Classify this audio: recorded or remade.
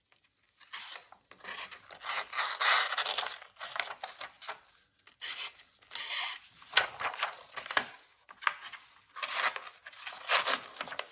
recorded